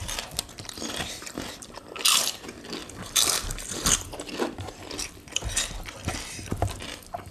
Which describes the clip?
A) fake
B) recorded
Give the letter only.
A